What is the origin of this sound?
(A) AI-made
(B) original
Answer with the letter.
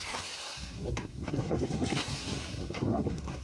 A